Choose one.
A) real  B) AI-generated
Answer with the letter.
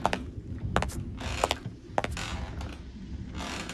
A